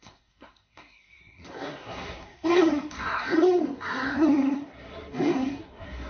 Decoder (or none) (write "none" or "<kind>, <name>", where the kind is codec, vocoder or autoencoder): codec, SNAC